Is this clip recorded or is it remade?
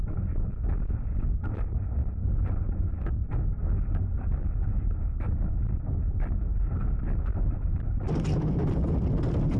recorded